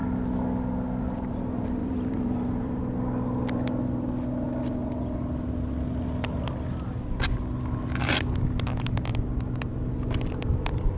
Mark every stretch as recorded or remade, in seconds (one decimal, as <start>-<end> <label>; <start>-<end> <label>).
0.0-1.8 recorded; 1.8-2.8 remade; 2.8-11.0 recorded